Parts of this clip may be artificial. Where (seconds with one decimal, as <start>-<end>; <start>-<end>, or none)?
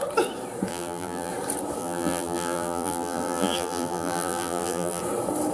0.7-1.3; 1.8-5.0